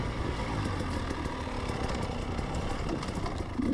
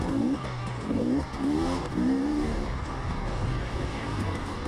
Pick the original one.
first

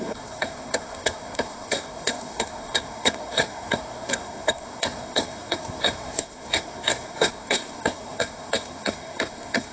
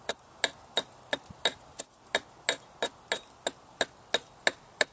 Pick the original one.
second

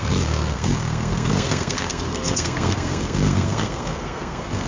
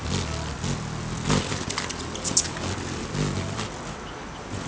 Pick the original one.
second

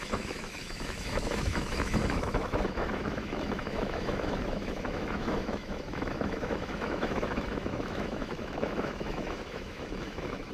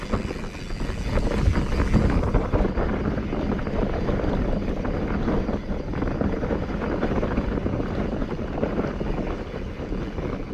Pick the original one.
second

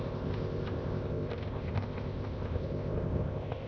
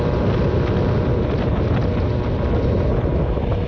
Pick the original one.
second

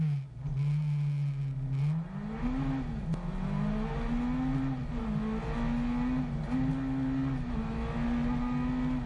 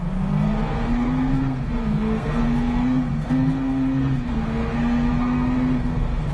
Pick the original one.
first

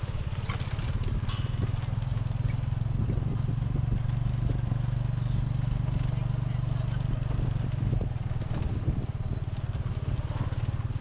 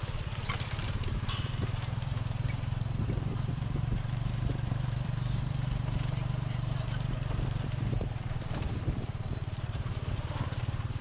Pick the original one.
first